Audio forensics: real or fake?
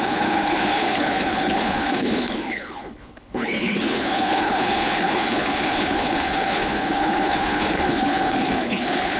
fake